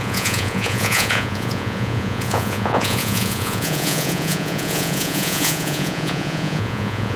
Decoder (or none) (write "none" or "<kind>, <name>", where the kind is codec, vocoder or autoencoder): vocoder, Vocos